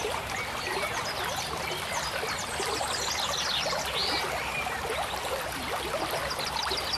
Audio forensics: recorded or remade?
recorded